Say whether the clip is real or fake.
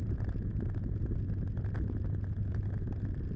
real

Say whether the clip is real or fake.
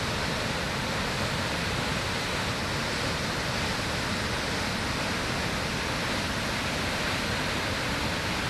real